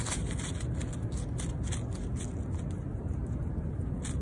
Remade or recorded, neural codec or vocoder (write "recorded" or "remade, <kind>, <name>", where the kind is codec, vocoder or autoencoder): recorded